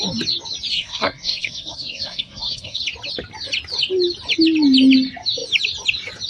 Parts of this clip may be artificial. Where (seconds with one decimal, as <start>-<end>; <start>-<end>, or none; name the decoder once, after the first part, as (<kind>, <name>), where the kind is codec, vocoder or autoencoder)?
0.7-2.8 (codec, SNAC)